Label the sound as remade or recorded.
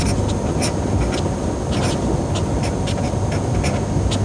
recorded